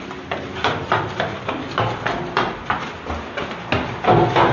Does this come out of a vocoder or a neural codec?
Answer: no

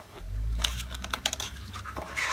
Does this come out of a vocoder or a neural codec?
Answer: yes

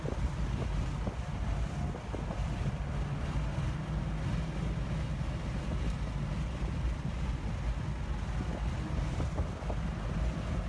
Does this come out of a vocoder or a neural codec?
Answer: no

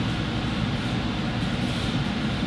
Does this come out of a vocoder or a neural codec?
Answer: no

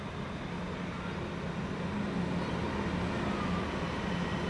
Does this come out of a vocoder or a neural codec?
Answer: no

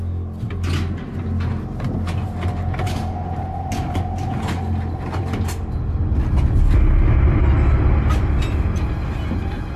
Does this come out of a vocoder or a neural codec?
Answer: no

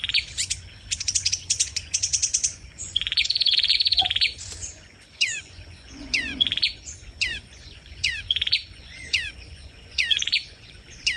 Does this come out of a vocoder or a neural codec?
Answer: yes